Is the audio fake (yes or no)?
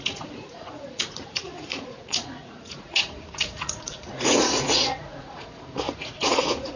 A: yes